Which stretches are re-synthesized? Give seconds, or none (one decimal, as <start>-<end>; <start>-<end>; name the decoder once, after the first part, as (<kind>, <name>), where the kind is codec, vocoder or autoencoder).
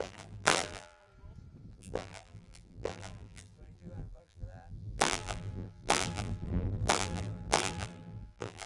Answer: 0.0-1.1 (vocoder, BigVGAN v2); 1.7-8.7